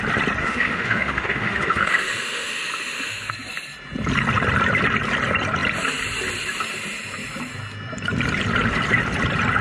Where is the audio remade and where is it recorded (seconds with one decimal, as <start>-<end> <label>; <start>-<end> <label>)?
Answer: 0.0-0.4 recorded; 0.4-3.3 remade; 3.3-9.6 recorded